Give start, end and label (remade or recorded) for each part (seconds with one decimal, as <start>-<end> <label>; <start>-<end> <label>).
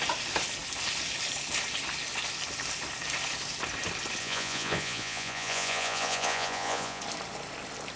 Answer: 0.0-4.2 recorded; 4.2-7.0 remade; 7.0-8.0 recorded